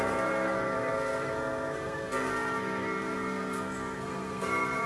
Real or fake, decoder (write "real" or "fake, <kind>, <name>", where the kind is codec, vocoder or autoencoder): fake, codec, SNAC